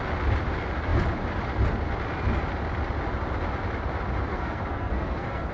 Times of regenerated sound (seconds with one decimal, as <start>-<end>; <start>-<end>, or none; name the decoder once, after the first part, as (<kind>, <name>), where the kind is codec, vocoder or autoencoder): 4.3-5.5 (codec, SNAC)